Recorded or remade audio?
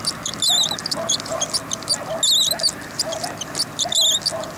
recorded